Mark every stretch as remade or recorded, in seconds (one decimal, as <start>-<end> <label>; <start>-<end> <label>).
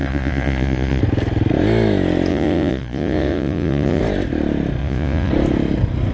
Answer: 0.0-1.0 remade; 1.0-2.3 recorded; 2.3-4.0 remade; 4.0-4.8 recorded; 4.8-5.3 remade; 5.3-6.1 recorded